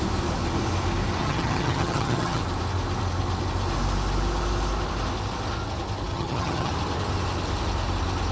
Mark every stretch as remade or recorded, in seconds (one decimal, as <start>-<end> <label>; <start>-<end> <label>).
0.0-1.2 recorded; 1.2-2.4 remade; 2.4-6.1 recorded; 6.1-6.7 remade; 6.7-8.3 recorded